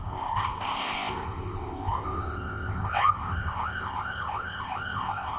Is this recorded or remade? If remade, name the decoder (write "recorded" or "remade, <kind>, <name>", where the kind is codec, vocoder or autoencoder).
remade, codec, ZipCodec